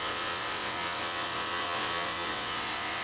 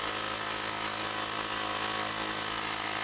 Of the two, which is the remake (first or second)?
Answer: first